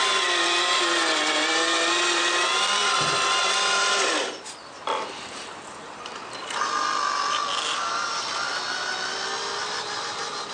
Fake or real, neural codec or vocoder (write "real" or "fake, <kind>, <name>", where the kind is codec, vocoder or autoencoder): real